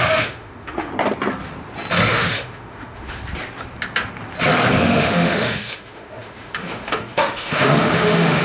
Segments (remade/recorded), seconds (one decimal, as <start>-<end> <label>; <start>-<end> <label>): 0.0-0.9 remade; 0.9-2.1 recorded; 2.1-3.2 remade; 3.2-4.8 recorded; 4.8-8.4 remade